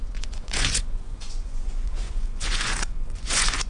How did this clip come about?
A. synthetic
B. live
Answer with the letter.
A